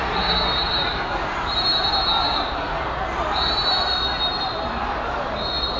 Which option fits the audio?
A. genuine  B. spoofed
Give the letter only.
A